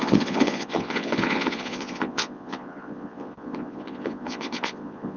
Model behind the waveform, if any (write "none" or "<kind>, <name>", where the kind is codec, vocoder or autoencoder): vocoder, Vocos